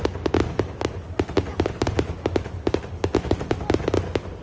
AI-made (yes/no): no